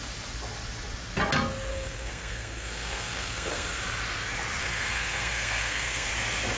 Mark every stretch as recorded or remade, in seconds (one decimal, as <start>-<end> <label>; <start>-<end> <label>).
0.0-1.7 recorded; 1.7-3.8 remade; 3.8-4.6 recorded; 4.6-6.1 remade; 6.1-6.6 recorded